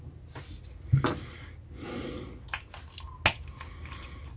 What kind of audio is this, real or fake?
real